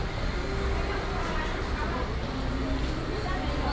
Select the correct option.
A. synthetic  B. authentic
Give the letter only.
B